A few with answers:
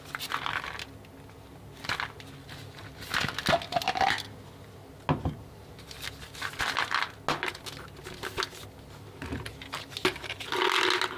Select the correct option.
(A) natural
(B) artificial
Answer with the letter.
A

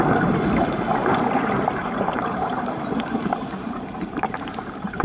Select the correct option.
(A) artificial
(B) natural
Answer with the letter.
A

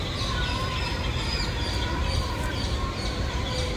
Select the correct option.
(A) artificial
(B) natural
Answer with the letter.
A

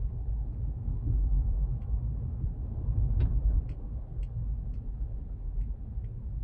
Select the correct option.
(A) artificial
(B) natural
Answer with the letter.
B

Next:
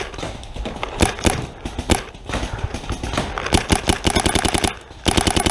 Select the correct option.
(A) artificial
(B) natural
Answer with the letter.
B